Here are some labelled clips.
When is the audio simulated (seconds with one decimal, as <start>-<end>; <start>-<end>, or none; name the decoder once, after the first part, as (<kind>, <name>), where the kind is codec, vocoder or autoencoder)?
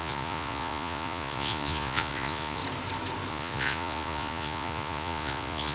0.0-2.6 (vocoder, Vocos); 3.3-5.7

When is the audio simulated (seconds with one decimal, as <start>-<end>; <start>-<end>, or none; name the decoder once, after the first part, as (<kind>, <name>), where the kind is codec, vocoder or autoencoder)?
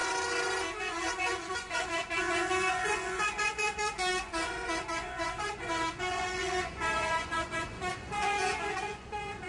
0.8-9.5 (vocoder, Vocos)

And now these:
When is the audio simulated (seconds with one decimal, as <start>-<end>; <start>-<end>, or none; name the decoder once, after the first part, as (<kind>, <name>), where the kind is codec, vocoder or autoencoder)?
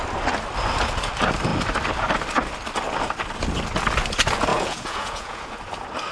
4.5-5.5 (vocoder, Vocos)